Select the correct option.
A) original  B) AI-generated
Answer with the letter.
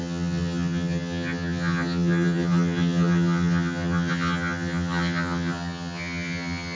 B